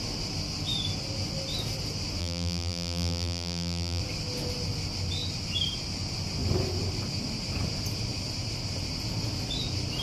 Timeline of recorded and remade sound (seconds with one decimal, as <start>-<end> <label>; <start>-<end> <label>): 0.0-2.2 recorded; 2.2-4.0 remade; 4.0-10.0 recorded